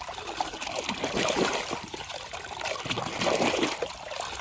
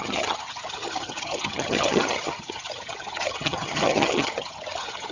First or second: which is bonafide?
first